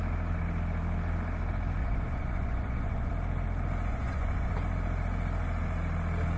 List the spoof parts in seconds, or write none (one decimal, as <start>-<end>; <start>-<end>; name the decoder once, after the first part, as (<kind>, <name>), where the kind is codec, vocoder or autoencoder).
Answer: 1.8-3.1 (vocoder, Vocos); 3.9-4.5